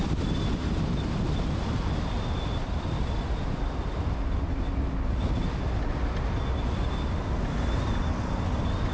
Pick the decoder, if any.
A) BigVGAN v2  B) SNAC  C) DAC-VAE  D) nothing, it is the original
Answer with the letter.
D